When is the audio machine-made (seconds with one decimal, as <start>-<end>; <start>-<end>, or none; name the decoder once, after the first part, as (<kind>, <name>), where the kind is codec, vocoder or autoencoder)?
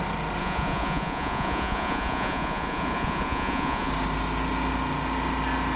0.4-3.9 (vocoder, Vocos)